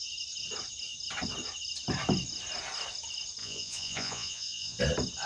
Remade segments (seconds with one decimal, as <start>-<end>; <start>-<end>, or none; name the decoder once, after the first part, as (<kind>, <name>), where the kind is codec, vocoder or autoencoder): 3.4-4.8 (vocoder, Vocos)